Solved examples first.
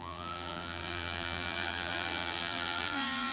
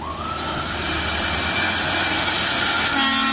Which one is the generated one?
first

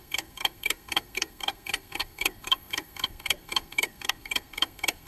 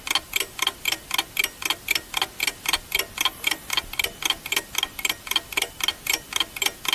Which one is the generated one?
first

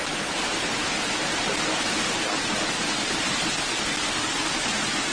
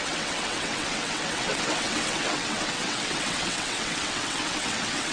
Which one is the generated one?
second